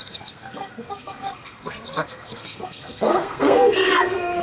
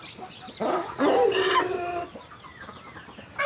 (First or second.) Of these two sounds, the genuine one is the second